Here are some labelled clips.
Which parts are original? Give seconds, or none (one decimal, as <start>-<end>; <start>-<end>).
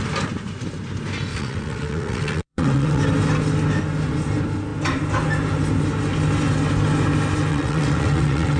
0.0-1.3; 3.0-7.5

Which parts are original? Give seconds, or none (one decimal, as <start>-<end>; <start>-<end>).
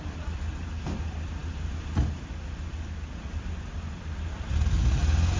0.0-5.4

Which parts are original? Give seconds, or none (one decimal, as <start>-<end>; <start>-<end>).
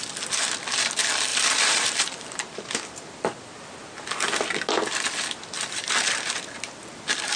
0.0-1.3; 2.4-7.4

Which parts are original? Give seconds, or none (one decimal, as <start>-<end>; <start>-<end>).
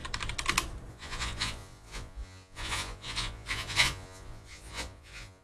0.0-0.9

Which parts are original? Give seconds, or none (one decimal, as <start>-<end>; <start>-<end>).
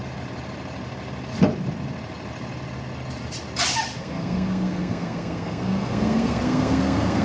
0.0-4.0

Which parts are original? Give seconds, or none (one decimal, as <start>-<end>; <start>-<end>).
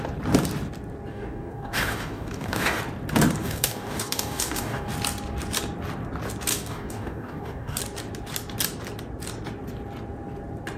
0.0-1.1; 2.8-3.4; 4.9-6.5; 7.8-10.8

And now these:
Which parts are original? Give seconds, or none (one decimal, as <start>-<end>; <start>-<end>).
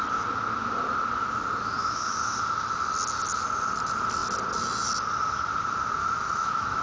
0.0-1.8; 2.3-6.0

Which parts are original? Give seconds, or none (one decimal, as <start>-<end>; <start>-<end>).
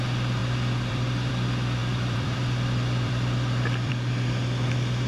0.0-0.4; 1.3-1.8; 3.9-5.1